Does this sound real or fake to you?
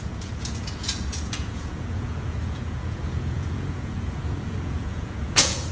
fake